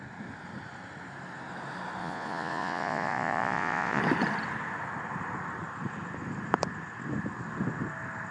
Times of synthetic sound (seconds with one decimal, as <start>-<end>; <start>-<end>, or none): 2.0-4.0